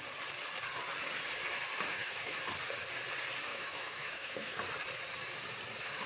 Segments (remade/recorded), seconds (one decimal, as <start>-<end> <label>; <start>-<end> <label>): 0.0-1.9 recorded; 1.9-2.4 remade; 2.4-3.5 recorded; 3.5-4.6 remade; 4.6-6.1 recorded